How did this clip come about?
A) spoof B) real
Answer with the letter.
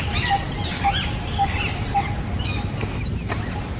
B